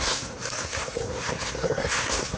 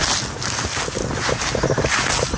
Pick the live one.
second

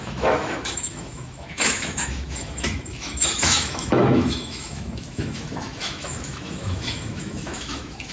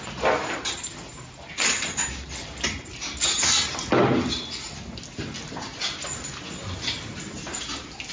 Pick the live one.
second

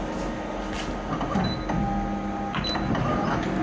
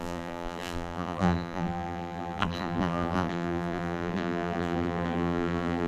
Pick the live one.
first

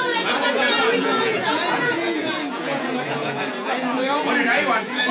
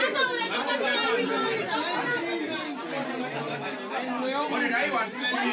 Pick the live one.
second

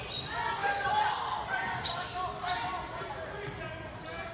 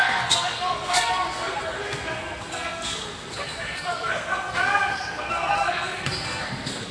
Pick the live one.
first